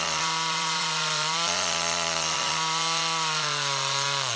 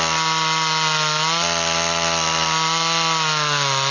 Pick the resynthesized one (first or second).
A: first